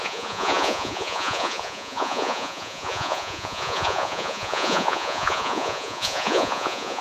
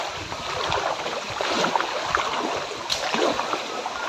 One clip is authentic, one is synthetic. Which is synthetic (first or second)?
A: first